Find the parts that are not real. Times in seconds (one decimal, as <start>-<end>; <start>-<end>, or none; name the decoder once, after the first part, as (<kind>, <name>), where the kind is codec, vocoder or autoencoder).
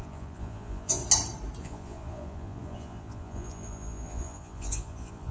0.0-1.0 (vocoder, Vocos); 1.6-5.3